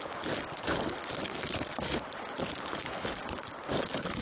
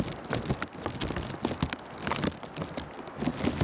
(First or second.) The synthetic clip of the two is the first